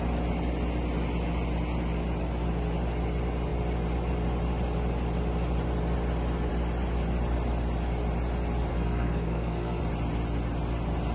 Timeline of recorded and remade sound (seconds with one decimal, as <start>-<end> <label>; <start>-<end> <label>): 0.0-8.7 recorded; 8.7-9.8 remade; 9.8-11.1 recorded